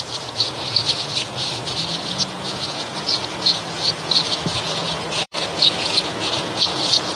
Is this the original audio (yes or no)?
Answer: no